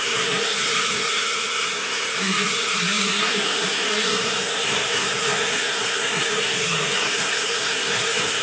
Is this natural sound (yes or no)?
no